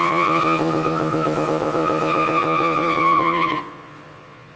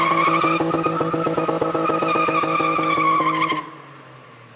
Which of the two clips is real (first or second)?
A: second